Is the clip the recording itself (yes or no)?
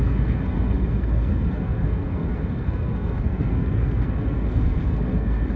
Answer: no